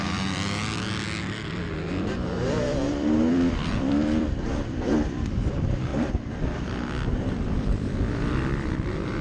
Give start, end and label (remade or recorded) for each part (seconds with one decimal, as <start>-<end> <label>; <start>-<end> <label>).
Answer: 0.0-0.6 remade; 0.6-2.9 recorded; 2.9-5.9 remade; 5.9-7.3 recorded; 7.3-9.2 remade